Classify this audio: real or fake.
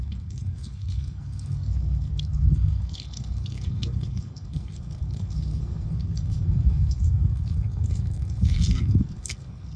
fake